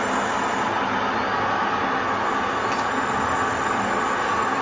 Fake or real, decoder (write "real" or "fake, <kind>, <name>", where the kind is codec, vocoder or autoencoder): real